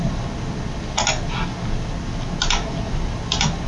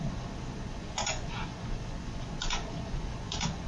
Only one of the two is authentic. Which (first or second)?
first